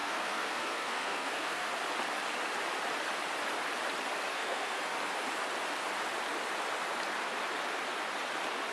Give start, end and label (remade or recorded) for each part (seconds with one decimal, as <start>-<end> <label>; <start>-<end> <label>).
0.0-1.7 remade; 1.7-4.3 recorded; 4.3-4.8 remade; 4.8-8.7 recorded